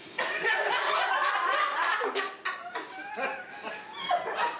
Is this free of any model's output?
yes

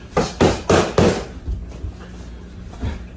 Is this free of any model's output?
yes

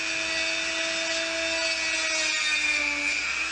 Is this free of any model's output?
yes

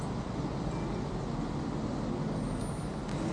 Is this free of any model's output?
yes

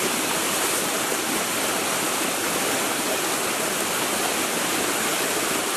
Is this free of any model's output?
yes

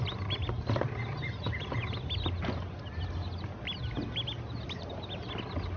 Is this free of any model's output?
yes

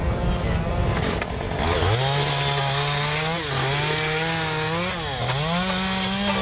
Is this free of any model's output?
yes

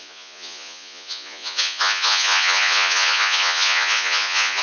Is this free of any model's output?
no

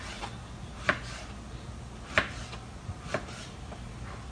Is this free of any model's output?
yes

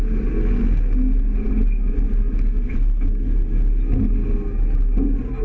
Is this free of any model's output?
yes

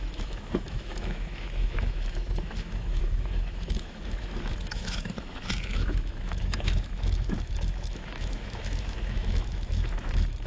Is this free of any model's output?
no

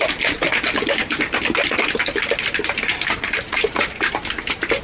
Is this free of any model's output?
yes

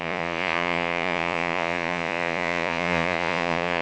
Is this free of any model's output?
no